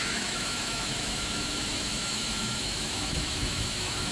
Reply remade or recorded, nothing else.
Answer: remade